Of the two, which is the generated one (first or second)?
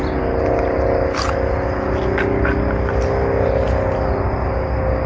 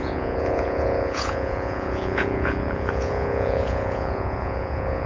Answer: second